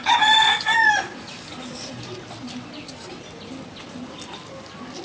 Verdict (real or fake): real